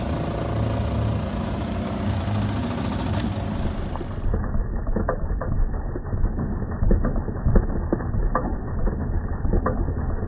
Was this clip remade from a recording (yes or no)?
no